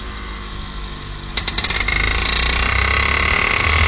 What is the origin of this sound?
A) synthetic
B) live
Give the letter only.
B